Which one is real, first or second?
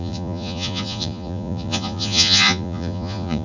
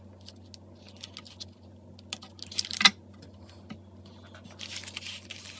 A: second